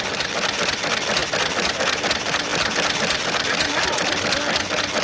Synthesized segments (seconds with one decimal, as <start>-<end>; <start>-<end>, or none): none